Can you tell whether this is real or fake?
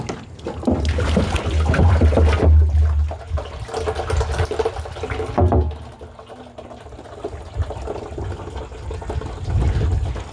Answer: real